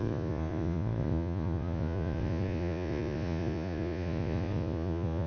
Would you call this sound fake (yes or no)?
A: yes